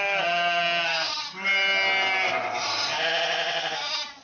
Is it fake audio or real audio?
real